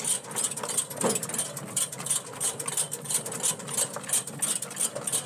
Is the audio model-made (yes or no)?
no